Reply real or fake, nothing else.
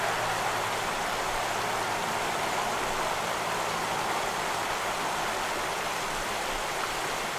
real